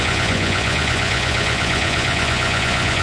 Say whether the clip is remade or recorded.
remade